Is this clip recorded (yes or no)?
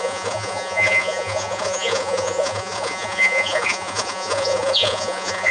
no